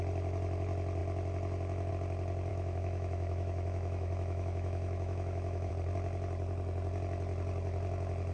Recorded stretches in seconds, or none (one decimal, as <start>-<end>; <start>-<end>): 0.0-2.5; 5.7-8.3